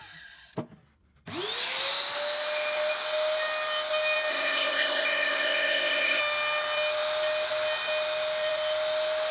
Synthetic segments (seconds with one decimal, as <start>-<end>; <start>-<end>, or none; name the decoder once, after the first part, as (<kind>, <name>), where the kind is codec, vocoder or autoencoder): 4.3-6.2 (codec, ZipCodec)